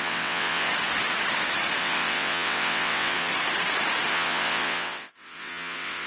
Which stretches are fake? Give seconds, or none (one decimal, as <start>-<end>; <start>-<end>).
0.0-0.7; 1.8-3.3; 4.1-6.1